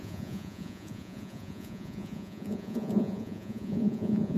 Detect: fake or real fake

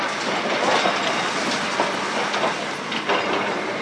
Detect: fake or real real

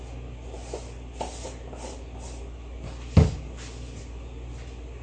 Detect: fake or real real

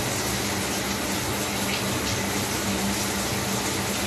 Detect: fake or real real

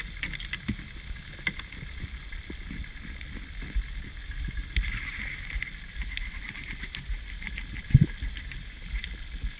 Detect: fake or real real